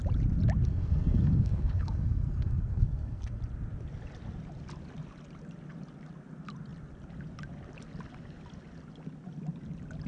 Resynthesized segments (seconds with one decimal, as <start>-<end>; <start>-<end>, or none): 0.7-3.4